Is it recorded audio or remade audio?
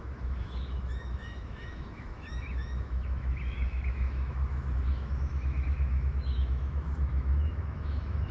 remade